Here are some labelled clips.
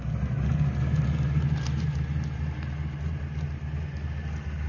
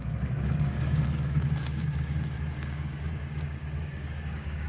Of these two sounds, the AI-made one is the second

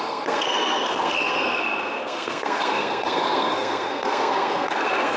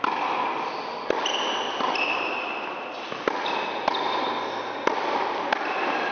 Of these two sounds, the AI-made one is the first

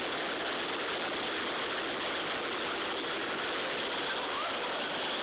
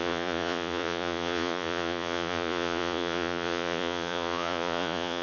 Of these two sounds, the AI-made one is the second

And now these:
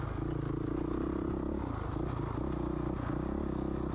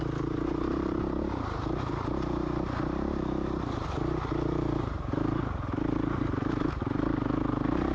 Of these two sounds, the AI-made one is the second